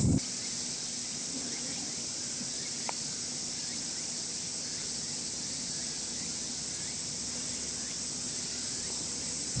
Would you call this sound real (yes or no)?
yes